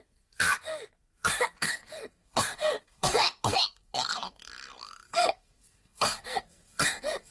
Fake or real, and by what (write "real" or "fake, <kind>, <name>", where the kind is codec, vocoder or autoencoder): fake, codec, SNAC